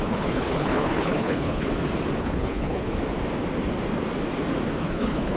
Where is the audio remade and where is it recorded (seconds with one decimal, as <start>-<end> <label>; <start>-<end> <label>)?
0.0-1.7 remade; 1.7-2.2 recorded; 2.2-2.9 remade; 2.9-4.8 recorded; 4.8-5.4 remade

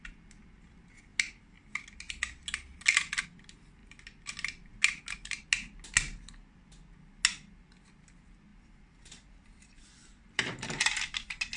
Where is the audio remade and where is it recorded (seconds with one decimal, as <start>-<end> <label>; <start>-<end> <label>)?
0.0-8.5 recorded; 8.5-11.0 remade; 11.0-11.6 recorded

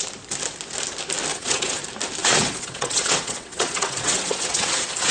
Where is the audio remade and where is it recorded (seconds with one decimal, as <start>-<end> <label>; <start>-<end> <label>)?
0.0-1.3 recorded; 1.3-1.8 remade; 1.8-2.2 recorded; 2.2-5.1 remade

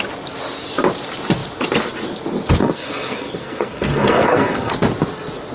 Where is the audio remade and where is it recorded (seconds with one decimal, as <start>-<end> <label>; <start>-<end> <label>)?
0.0-2.6 recorded; 2.6-4.7 remade; 4.7-5.5 recorded

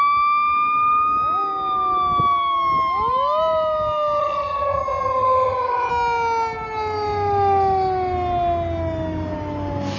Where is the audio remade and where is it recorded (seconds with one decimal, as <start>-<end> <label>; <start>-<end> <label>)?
0.0-4.2 recorded; 4.2-5.9 remade; 5.9-10.0 recorded

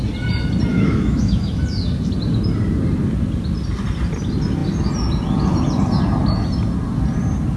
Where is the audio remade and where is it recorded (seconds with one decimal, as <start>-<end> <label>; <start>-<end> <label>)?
0.0-0.7 recorded; 0.7-1.6 remade; 1.6-7.6 recorded

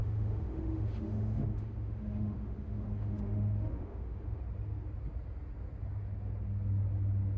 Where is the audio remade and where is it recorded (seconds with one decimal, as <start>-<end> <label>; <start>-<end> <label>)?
0.0-4.4 remade; 4.4-7.4 recorded